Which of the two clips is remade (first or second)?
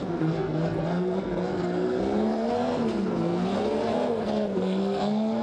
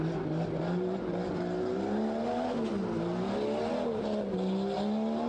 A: first